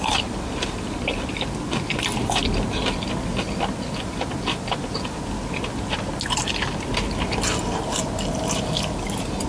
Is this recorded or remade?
recorded